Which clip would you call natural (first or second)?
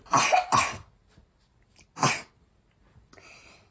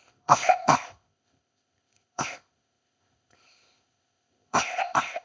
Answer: first